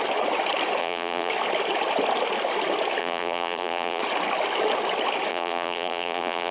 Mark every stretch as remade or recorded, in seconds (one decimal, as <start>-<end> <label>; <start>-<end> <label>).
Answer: 0.0-0.8 recorded; 0.8-1.3 remade; 1.3-3.0 recorded; 3.0-4.0 remade; 4.0-5.3 recorded; 5.3-6.5 remade